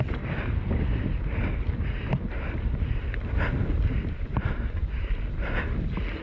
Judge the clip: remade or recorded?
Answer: recorded